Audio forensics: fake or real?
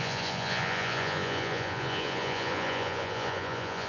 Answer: fake